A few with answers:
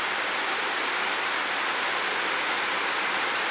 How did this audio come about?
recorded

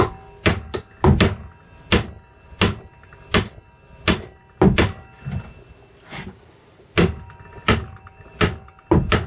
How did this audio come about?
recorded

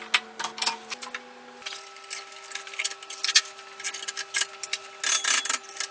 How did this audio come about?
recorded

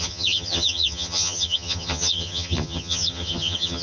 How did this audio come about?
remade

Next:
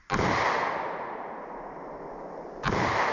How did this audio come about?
recorded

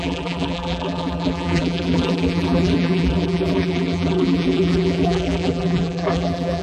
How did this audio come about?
remade